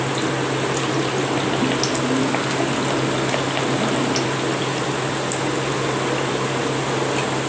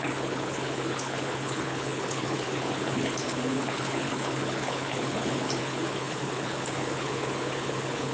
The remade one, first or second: second